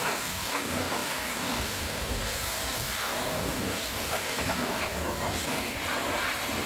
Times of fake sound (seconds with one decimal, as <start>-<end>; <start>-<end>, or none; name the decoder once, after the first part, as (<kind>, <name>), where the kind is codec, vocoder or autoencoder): 0.0-5.8 (codec, DAC)